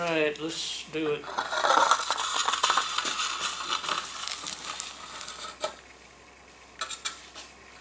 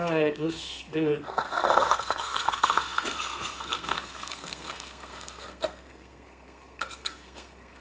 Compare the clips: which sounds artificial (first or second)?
second